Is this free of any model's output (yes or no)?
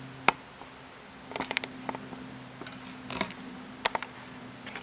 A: yes